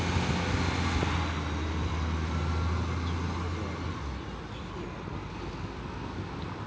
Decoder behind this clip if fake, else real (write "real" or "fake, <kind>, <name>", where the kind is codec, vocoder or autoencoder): real